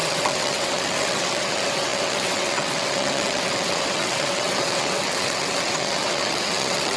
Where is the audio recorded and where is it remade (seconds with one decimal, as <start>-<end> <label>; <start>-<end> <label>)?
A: 0.0-7.0 remade